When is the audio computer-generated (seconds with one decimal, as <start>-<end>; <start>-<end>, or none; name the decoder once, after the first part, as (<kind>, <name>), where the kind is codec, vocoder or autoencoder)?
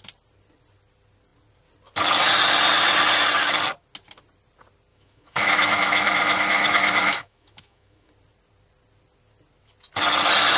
4.9-8.1 (autoencoder, DAC-VAE)